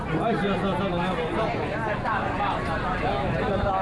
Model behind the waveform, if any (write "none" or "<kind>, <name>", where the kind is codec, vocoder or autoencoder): none